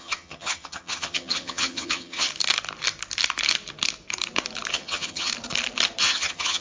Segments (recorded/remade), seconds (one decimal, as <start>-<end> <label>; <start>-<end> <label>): 0.0-2.3 remade; 2.3-4.7 recorded; 4.7-5.3 remade; 5.3-6.0 recorded; 6.0-6.6 remade

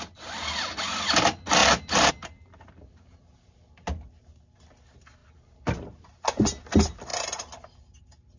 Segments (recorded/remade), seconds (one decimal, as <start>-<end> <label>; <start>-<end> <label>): 0.0-8.4 recorded

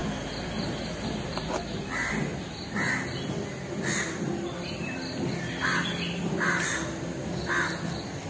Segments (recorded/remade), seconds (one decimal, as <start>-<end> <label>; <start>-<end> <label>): 0.0-8.3 recorded

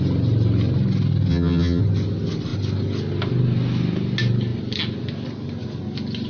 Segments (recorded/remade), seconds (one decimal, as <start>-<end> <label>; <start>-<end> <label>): 0.0-1.3 recorded; 1.3-1.8 remade; 1.8-6.3 recorded

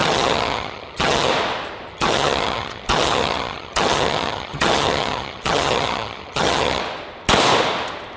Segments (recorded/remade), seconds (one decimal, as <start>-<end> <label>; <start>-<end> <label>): 0.0-1.3 remade; 1.3-1.9 recorded; 1.9-6.8 remade; 6.8-8.2 recorded

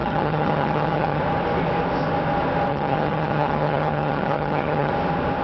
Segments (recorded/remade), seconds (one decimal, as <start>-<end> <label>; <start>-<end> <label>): 0.0-1.2 remade; 1.2-2.7 recorded; 2.7-4.9 remade; 4.9-5.4 recorded

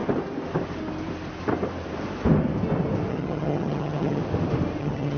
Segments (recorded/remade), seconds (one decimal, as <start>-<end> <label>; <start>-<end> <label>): 0.0-3.1 recorded; 3.1-4.2 remade; 4.2-4.8 recorded; 4.8-5.2 remade

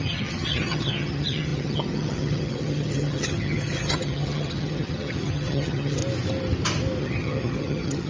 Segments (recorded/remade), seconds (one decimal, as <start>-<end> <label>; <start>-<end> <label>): 0.0-6.0 remade; 6.0-7.0 recorded; 7.0-8.1 remade